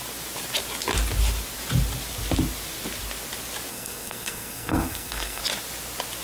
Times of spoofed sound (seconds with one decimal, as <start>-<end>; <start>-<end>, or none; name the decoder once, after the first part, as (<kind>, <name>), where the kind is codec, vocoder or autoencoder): 3.7-5.4 (codec, SNAC)